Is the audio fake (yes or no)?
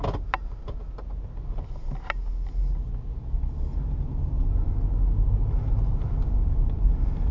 no